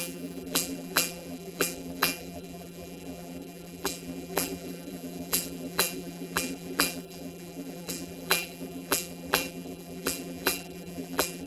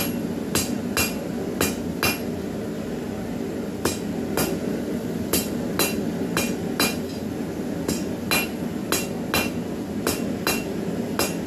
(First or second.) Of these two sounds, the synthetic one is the first